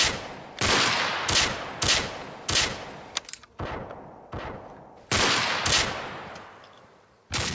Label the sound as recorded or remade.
recorded